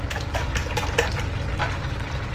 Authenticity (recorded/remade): recorded